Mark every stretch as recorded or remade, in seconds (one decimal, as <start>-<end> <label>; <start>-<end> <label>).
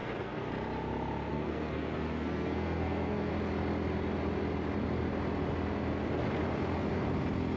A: 0.0-0.5 remade; 0.5-1.3 recorded; 1.3-3.3 remade; 3.3-7.6 recorded